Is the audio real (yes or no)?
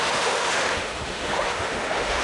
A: no